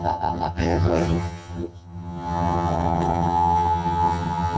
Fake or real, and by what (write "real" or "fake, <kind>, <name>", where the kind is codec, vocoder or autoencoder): fake, vocoder, HiFi-GAN